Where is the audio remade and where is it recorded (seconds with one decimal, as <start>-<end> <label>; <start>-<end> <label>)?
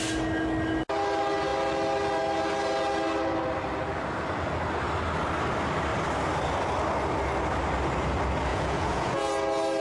0.0-8.5 recorded; 8.5-9.3 remade; 9.3-9.8 recorded